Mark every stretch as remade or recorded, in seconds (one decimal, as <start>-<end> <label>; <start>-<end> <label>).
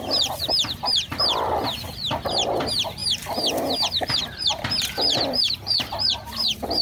0.0-3.0 remade; 3.0-4.2 recorded; 4.2-6.8 remade